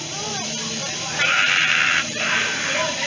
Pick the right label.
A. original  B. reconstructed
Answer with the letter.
B